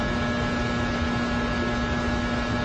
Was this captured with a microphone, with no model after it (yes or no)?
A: yes